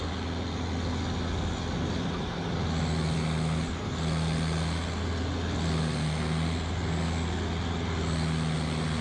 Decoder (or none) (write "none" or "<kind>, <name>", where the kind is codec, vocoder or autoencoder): none